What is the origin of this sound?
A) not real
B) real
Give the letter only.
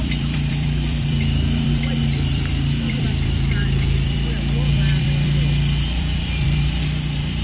A